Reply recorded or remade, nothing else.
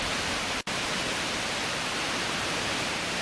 remade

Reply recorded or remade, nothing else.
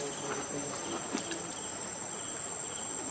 recorded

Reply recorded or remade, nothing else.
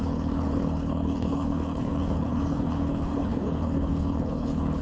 remade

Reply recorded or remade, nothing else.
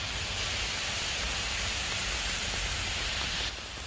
recorded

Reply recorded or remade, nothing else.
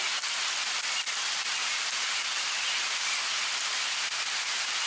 recorded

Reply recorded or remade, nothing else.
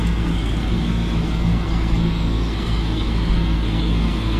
remade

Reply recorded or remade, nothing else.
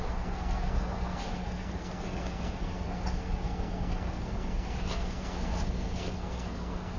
remade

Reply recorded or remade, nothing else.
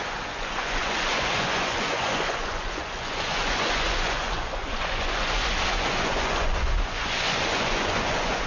remade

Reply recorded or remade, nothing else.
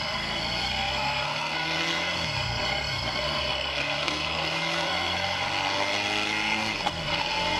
remade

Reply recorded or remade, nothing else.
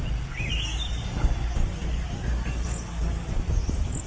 recorded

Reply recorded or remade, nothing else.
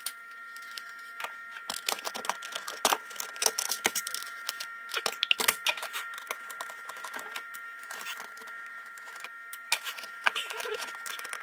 remade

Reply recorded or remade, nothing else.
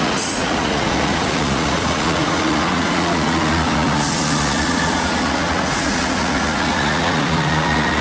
remade